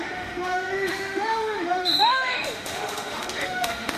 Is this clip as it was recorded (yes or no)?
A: no